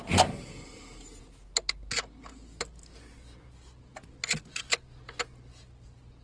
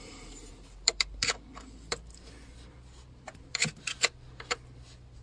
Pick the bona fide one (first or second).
first